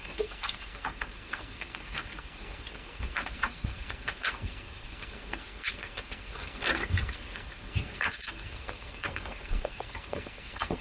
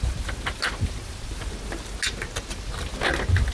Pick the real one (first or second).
second